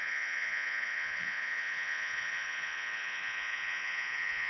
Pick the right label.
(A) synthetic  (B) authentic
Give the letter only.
A